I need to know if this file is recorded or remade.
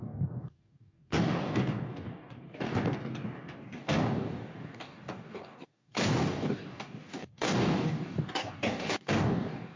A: remade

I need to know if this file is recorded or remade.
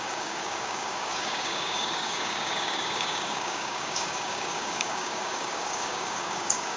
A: remade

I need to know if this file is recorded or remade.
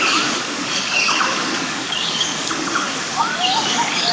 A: remade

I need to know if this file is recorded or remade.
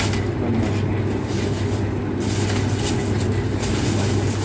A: recorded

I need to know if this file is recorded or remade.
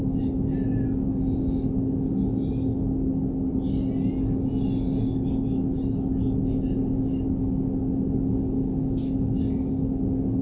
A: recorded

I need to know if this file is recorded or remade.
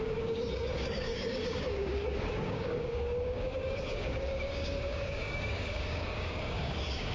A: remade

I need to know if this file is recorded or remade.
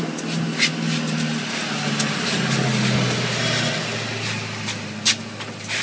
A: recorded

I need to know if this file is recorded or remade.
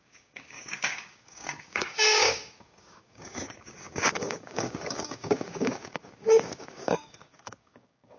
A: remade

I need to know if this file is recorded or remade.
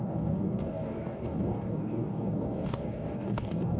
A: remade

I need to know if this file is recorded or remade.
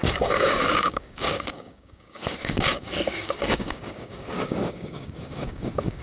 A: remade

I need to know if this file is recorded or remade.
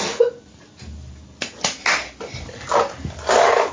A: recorded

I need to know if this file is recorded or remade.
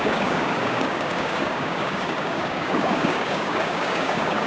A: remade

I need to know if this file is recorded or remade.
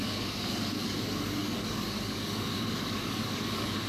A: remade